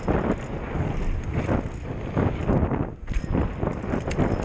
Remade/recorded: recorded